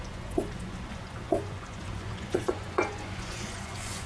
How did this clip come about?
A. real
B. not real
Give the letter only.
B